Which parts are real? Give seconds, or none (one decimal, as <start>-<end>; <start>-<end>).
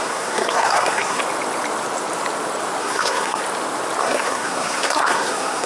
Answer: 1.2-2.8; 3.4-4.0